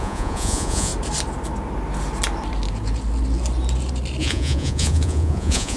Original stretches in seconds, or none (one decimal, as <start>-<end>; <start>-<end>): 0.9-4.2